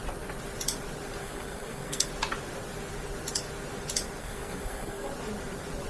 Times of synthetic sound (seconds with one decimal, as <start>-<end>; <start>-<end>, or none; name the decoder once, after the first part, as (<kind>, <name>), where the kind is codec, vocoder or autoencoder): 1.2-2.1 (codec, SNAC); 4.2-5.1